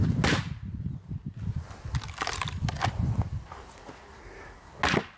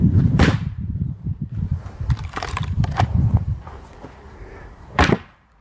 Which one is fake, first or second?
second